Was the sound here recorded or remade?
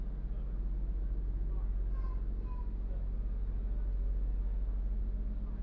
recorded